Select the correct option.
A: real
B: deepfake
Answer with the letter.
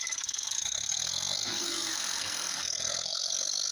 B